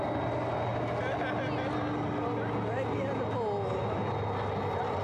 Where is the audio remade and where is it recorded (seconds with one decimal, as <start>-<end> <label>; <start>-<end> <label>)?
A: 0.0-5.0 recorded